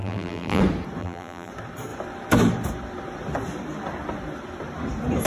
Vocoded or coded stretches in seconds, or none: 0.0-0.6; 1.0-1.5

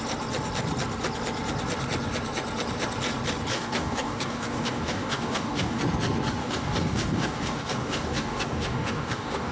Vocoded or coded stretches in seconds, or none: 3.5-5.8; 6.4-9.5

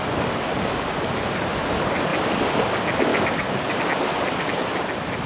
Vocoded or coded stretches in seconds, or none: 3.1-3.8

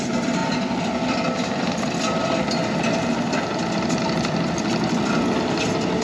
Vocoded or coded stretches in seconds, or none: none